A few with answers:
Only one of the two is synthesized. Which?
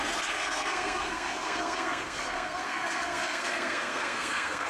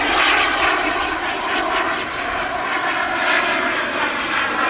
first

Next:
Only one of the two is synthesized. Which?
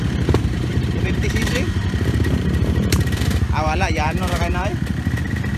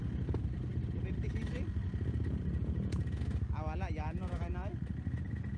first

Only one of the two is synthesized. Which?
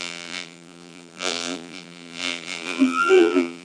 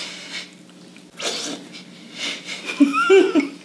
first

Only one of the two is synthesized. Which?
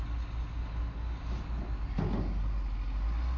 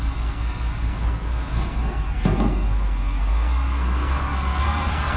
second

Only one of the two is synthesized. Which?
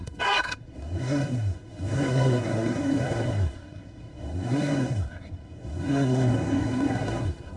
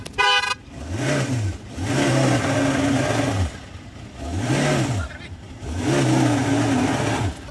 first